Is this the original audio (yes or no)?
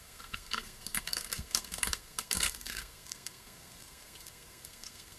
no